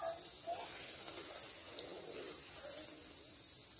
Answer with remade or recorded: recorded